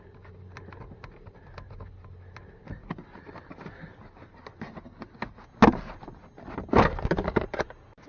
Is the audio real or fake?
real